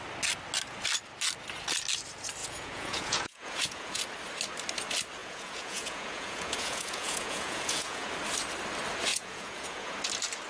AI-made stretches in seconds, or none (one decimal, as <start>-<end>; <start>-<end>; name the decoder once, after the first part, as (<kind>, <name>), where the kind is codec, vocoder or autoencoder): 2.4-4.0 (vocoder, Vocos); 5.2-8.1; 9.1-10.0